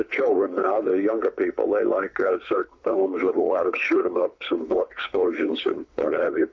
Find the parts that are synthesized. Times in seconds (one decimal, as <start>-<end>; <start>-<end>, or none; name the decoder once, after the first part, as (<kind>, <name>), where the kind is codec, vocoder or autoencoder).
0.0-0.9 (codec, HILCodec); 2.2-6.5